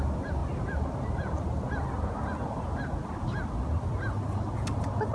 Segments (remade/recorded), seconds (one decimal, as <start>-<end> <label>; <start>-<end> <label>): 0.0-5.1 recorded